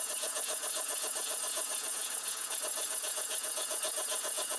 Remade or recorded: remade